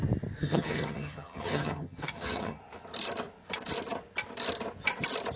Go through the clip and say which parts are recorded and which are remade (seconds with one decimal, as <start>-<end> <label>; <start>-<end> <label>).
0.0-0.4 recorded; 0.4-2.6 remade; 2.6-5.4 recorded